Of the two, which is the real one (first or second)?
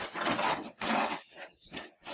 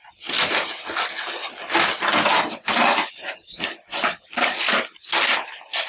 second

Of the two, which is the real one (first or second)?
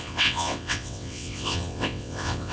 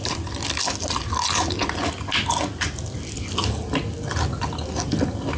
second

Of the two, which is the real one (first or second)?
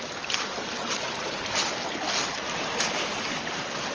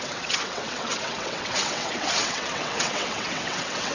first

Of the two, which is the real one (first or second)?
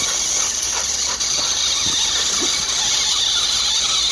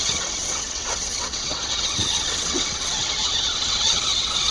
first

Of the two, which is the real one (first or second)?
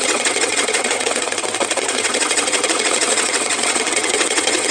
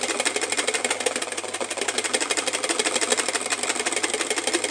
second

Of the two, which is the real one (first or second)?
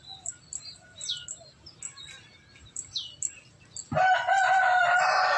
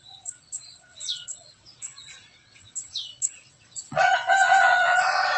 first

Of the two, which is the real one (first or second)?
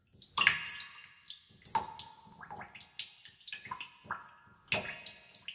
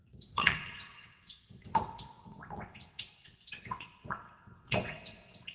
first